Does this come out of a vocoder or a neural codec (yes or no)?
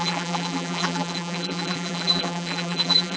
yes